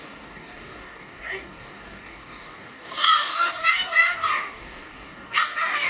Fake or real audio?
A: fake